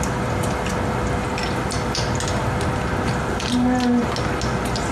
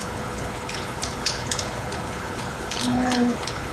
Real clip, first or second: first